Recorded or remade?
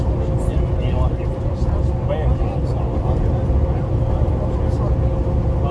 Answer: recorded